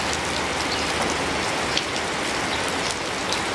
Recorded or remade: recorded